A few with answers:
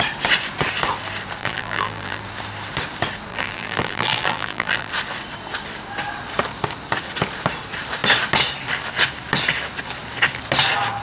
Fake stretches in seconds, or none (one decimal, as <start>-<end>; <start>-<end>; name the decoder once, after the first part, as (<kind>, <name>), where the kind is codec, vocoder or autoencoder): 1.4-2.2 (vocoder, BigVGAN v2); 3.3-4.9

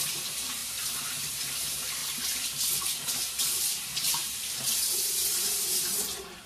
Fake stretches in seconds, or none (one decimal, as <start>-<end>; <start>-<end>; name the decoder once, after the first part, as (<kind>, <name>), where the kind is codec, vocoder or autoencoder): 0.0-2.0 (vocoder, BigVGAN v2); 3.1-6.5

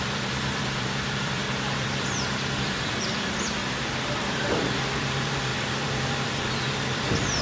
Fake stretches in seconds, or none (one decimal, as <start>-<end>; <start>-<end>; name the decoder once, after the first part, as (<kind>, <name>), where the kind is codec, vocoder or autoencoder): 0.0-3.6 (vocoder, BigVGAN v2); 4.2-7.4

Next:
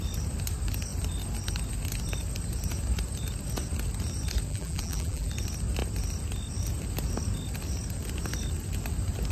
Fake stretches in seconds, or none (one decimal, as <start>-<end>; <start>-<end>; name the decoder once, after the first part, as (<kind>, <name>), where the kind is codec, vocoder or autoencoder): 4.5-5.3 (vocoder, BigVGAN v2)

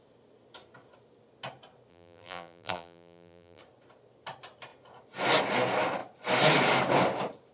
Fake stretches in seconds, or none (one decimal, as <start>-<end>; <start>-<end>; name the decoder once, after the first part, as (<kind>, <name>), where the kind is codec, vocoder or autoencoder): 1.9-3.6 (vocoder, BigVGAN v2)